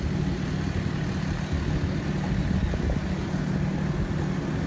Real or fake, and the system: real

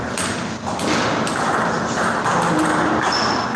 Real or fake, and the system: real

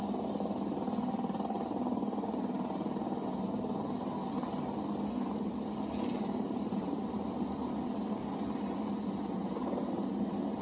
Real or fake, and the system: real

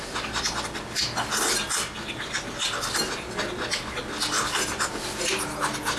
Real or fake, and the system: real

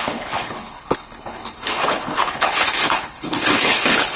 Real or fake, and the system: fake, codec, HILCodec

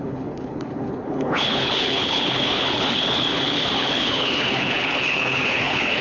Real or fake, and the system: fake, codec, HILCodec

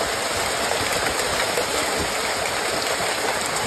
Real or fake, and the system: real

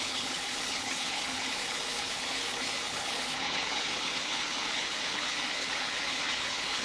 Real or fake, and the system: fake, codec, HILCodec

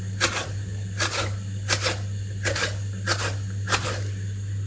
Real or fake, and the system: real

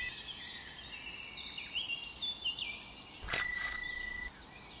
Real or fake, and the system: real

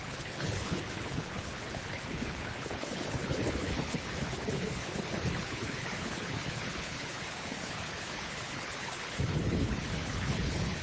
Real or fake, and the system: fake, codec, HILCodec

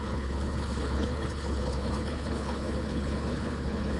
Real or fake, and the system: fake, codec, HILCodec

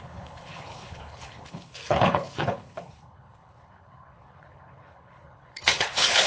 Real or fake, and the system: fake, codec, HILCodec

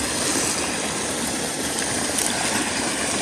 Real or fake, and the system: real